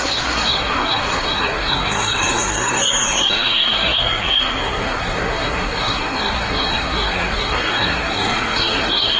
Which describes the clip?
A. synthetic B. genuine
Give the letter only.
A